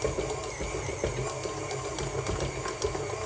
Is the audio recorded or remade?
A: recorded